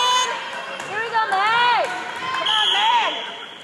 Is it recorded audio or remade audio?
recorded